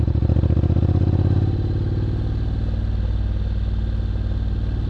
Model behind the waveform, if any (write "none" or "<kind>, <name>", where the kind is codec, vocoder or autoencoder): none